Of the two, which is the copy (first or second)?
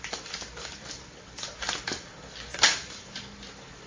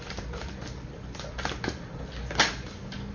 first